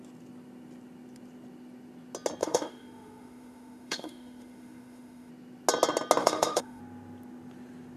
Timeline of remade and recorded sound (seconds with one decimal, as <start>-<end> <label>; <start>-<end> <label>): 0.0-2.4 recorded; 2.4-5.3 remade; 5.3-6.2 recorded; 6.2-6.8 remade; 6.8-8.0 recorded